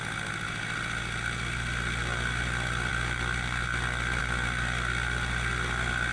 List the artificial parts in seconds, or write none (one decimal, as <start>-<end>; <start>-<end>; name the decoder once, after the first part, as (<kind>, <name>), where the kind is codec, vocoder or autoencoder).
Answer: none